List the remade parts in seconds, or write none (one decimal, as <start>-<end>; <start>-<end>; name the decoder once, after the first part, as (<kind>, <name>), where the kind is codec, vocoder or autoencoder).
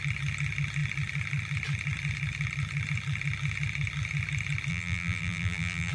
4.7-5.9 (vocoder, BigVGAN v2)